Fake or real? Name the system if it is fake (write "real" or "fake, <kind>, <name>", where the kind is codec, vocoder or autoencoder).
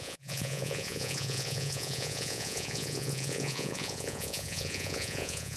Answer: fake, vocoder, Vocos